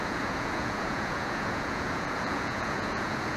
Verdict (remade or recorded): remade